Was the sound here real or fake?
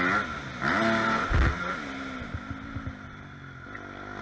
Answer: real